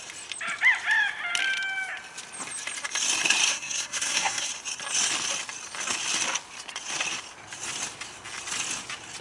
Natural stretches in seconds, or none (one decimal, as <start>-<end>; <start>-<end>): 0.0-3.5; 4.5-9.2